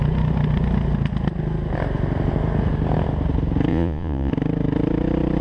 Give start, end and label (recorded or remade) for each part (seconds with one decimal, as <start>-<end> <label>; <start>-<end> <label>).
0.0-3.7 recorded; 3.7-4.3 remade; 4.3-5.4 recorded